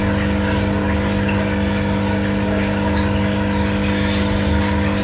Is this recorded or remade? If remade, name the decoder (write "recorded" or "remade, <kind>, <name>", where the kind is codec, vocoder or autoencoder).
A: recorded